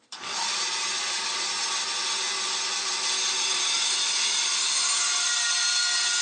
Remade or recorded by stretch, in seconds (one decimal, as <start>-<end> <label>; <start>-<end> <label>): 0.0-6.2 recorded